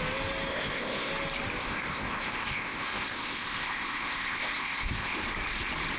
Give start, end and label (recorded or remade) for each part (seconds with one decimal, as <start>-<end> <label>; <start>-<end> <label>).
0.0-0.5 recorded; 0.5-1.1 remade; 1.1-1.6 recorded; 1.6-5.2 remade; 5.2-6.0 recorded